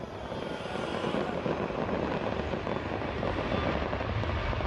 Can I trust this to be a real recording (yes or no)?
yes